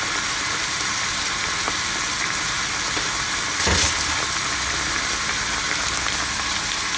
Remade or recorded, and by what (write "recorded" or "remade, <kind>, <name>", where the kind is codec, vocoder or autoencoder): recorded